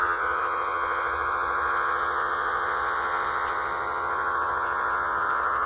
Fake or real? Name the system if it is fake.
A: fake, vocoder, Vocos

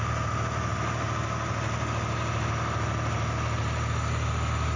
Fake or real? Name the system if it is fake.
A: real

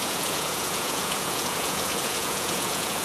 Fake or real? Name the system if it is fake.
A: fake, vocoder, Vocos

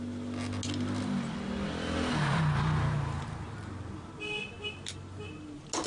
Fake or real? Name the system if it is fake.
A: real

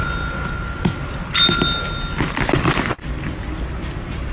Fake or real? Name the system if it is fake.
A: real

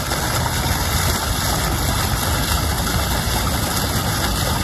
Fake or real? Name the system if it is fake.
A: real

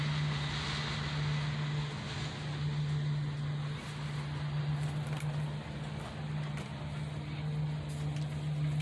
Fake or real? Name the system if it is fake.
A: real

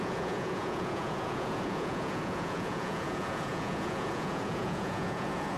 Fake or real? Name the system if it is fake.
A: fake, vocoder, Vocos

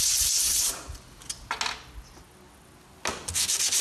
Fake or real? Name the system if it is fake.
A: real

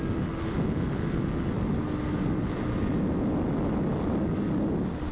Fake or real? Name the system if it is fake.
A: real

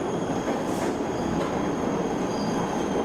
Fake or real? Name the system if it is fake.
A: real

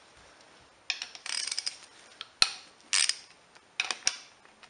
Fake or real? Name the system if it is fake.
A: real